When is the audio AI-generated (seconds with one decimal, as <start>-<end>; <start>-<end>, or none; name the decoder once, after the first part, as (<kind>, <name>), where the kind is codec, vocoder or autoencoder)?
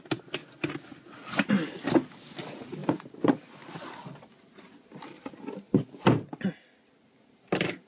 none